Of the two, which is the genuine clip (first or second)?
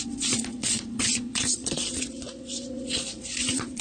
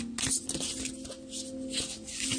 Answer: second